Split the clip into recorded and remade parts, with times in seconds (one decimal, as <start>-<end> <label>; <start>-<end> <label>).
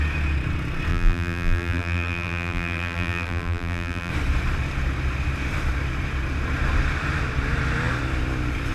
0.0-0.9 recorded; 0.9-4.1 remade; 4.1-8.7 recorded